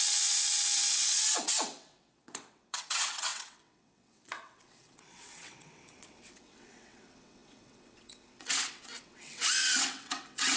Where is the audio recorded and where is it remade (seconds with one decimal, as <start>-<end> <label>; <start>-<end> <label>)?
0.0-10.6 remade